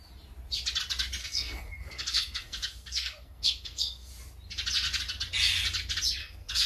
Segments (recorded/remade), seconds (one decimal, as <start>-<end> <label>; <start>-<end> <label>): 0.0-1.2 recorded; 1.2-4.1 remade; 4.1-6.2 recorded; 6.2-6.7 remade